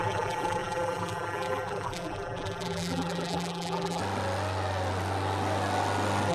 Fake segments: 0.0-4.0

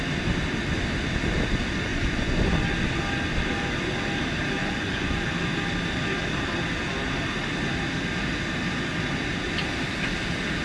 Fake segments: 1.9-2.5; 4.6-5.3